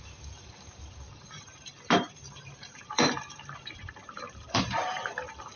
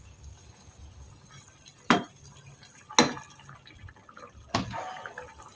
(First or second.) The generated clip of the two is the first